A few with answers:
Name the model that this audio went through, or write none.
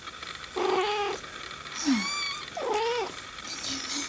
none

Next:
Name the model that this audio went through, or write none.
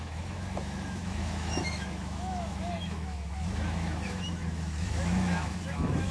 autoencoder, DAC-VAE